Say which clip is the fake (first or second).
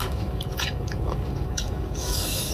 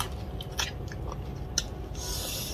first